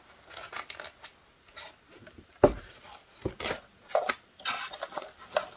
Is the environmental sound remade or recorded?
recorded